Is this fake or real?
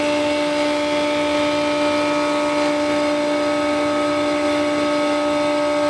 real